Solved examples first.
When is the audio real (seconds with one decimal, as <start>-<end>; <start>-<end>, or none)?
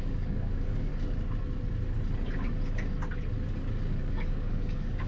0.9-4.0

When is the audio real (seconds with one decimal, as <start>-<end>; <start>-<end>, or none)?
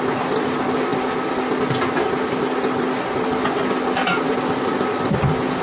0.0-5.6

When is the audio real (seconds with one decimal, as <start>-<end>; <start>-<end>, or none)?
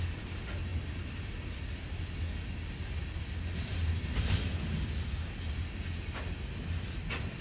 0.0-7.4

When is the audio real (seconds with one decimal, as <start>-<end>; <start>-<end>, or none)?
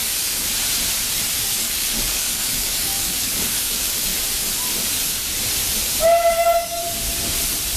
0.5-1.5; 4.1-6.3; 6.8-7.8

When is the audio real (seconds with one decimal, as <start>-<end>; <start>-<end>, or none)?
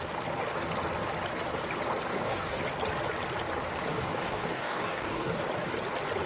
0.0-2.1; 2.6-3.9; 5.4-6.3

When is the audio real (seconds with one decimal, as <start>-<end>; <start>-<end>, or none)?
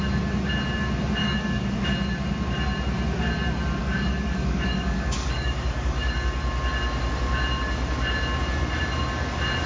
0.0-1.2; 1.7-3.8; 6.4-9.7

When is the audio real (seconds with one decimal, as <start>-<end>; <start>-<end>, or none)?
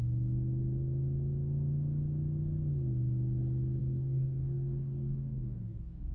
0.0-3.8